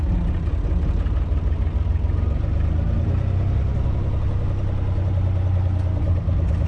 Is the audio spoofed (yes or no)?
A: no